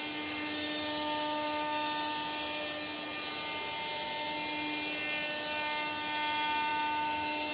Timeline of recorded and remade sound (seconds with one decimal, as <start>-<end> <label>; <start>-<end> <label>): 0.0-7.5 recorded